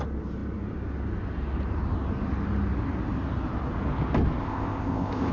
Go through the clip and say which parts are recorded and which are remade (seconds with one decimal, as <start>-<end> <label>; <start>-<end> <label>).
0.0-4.4 recorded; 4.4-5.3 remade